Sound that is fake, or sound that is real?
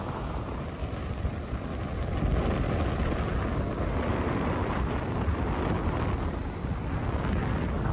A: real